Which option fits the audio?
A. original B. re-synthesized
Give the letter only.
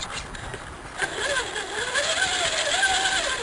A